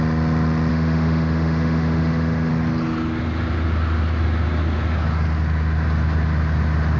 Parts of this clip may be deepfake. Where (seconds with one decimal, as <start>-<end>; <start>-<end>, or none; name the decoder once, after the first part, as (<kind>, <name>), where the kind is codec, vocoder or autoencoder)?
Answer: 0.7-2.5 (autoencoder, DAC-VAE)

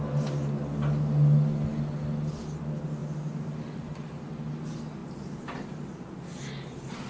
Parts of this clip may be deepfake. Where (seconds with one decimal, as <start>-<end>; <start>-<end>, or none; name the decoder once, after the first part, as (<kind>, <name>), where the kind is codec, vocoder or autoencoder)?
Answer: none

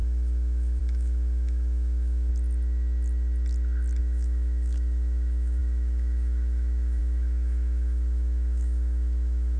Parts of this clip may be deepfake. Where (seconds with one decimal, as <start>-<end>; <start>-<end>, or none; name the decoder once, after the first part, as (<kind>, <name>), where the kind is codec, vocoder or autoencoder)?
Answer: 0.0-2.3 (autoencoder, DAC-VAE); 4.0-9.6

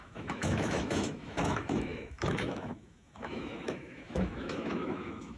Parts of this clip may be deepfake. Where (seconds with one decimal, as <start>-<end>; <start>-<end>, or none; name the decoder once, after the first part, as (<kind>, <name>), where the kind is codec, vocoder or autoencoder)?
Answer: 0.0-5.4 (autoencoder, DAC-VAE)

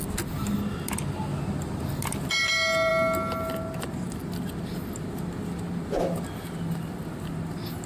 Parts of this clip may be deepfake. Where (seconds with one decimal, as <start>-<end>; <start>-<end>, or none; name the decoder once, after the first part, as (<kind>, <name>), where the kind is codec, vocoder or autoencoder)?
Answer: none

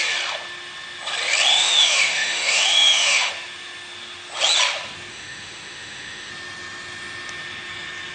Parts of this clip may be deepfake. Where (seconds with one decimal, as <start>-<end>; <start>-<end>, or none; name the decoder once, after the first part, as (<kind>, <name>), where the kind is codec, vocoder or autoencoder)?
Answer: 1.5-3.3 (autoencoder, DAC-VAE); 5.1-6.3

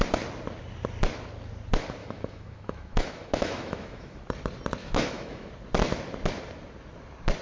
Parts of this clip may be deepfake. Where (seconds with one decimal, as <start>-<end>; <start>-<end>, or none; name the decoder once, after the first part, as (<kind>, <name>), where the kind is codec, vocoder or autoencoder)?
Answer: 2.0-4.2 (autoencoder, DAC-VAE); 4.8-5.5

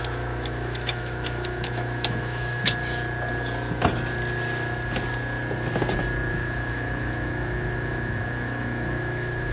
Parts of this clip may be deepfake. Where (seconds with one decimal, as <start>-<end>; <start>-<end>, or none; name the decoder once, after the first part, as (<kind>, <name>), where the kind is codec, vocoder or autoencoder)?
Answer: 0.0-2.6 (autoencoder, DAC-VAE); 6.3-9.5